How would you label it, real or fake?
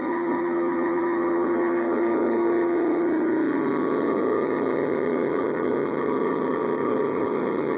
fake